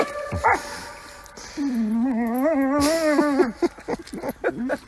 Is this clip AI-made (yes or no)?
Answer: no